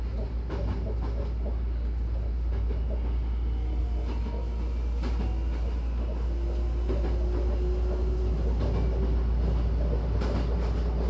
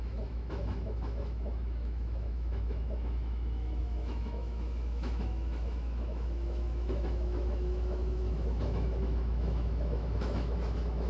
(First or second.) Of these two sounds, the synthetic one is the second